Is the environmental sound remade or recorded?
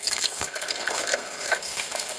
remade